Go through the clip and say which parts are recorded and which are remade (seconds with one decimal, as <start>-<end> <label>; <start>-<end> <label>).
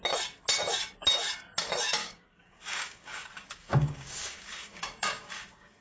0.0-2.0 recorded; 2.0-5.8 remade